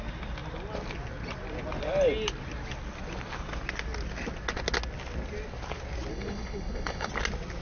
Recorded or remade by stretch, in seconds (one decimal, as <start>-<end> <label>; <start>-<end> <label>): 0.0-6.1 recorded; 6.1-7.1 remade; 7.1-7.6 recorded